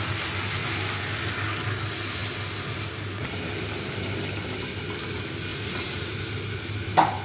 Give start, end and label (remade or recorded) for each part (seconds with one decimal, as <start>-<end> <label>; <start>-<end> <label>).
0.0-5.5 recorded; 5.5-6.1 remade; 6.1-7.2 recorded